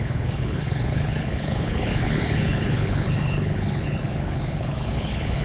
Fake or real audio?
fake